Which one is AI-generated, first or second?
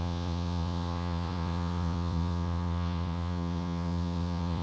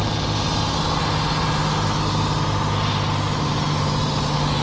first